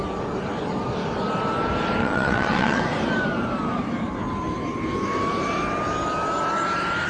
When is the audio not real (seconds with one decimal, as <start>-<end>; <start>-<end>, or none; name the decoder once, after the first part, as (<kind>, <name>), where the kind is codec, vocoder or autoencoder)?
2.0-2.8 (vocoder, WaveNeXt)